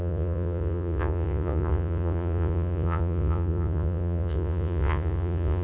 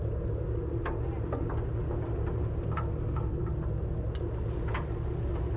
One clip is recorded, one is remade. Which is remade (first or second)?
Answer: first